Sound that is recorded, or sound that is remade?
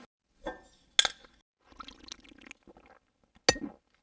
recorded